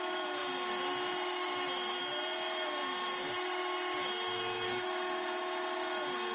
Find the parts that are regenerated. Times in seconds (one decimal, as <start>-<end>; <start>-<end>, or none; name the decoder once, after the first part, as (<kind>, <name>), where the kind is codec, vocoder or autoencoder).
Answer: none